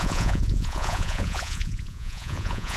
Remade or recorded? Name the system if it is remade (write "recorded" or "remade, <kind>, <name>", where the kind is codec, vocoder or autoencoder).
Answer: remade, vocoder, Vocos